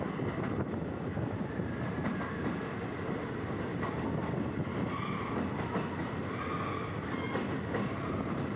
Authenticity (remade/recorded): recorded